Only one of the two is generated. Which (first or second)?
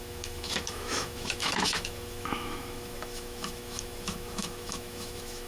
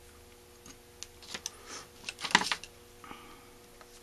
first